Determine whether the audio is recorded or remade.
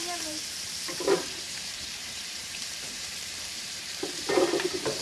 remade